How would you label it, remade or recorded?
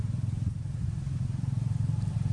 remade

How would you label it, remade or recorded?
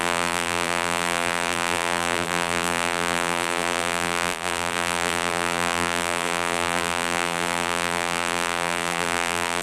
remade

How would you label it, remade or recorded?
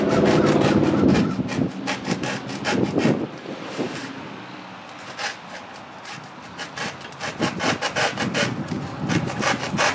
recorded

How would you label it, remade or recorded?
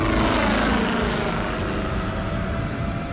recorded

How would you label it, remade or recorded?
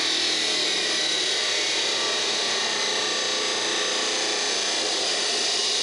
recorded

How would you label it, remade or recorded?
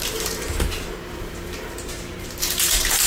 remade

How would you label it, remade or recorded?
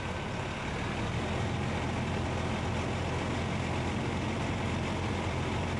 recorded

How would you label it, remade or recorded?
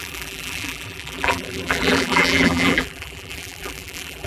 remade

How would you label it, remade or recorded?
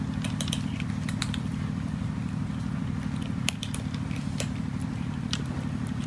remade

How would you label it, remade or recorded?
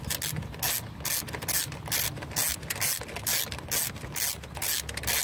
recorded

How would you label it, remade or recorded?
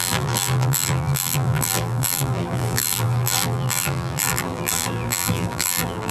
remade